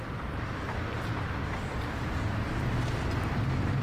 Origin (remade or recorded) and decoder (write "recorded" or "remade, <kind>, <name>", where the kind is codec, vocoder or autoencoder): remade, vocoder, BigVGAN v2